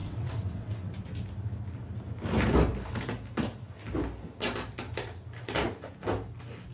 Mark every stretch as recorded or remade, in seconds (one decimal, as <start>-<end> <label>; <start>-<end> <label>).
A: 0.0-0.9 remade; 0.9-6.7 recorded